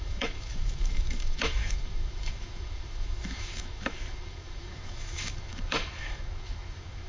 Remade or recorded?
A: remade